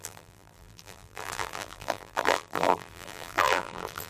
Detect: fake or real fake